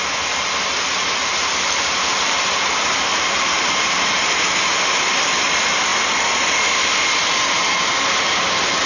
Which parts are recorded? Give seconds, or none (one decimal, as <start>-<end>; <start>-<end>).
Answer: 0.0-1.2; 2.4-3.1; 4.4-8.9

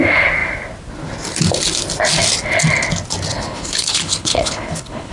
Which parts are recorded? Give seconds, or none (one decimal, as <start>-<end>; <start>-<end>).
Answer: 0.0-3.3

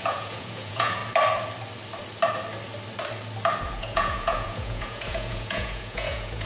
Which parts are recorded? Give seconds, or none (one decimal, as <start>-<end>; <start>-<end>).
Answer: 1.0-3.8

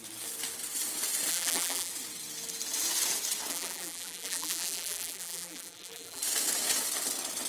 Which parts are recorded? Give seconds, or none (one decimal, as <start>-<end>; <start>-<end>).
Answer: 0.0-1.3; 1.9-3.5; 6.2-7.5